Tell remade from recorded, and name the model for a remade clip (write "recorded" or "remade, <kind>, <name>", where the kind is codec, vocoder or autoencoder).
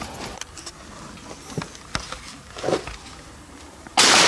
recorded